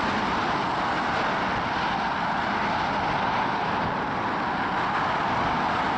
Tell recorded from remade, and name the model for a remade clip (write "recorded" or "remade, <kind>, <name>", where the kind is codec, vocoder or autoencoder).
recorded